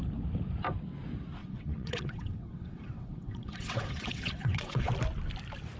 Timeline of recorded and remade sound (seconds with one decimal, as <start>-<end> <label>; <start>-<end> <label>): 0.0-1.4 recorded; 1.4-4.9 remade; 4.9-5.8 recorded